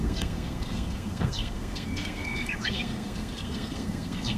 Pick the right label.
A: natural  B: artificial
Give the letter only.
B